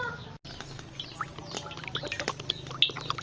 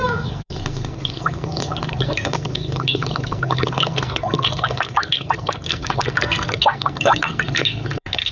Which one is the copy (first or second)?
second